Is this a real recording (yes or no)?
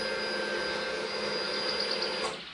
yes